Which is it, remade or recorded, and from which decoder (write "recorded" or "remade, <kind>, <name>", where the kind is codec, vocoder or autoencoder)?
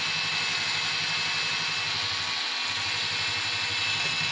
recorded